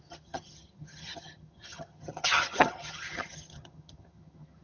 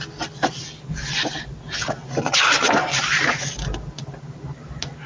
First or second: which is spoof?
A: first